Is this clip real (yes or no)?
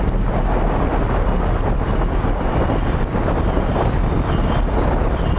yes